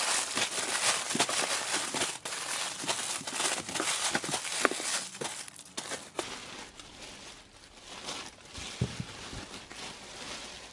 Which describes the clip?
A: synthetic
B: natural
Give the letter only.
B